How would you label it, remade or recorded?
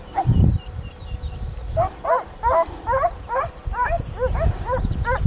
recorded